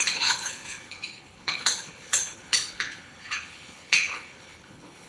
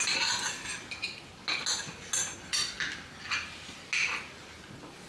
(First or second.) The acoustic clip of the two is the second